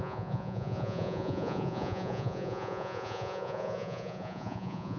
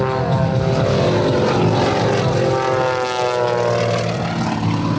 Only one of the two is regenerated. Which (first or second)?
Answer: first